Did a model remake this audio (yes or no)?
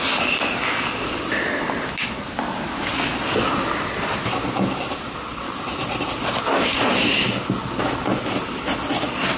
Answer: no